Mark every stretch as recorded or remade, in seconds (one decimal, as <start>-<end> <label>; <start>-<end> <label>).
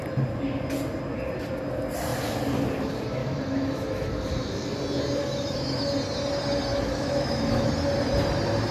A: 0.0-3.2 recorded; 3.2-4.1 remade; 4.1-5.2 recorded; 5.2-5.9 remade; 5.9-6.7 recorded; 6.7-7.7 remade; 7.7-8.7 recorded